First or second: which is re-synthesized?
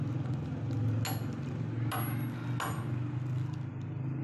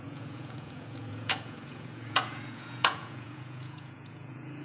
second